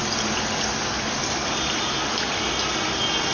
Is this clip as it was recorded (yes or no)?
yes